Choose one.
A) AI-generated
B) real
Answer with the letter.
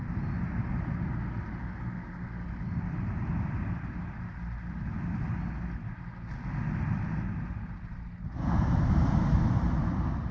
B